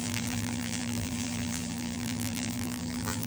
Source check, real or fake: fake